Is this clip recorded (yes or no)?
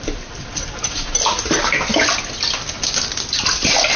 yes